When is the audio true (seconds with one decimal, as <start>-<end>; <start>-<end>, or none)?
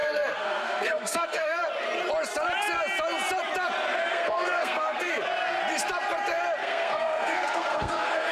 1.6-4.1; 5.1-6.6